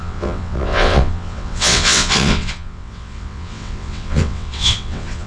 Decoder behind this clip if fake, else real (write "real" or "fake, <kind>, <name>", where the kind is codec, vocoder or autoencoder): fake, vocoder, WaveNeXt